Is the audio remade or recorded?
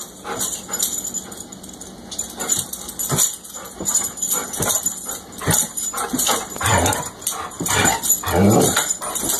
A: recorded